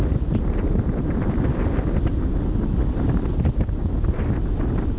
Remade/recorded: recorded